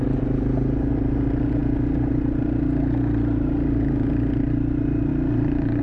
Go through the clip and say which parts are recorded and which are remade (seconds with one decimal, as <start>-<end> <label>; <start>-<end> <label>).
0.0-5.8 recorded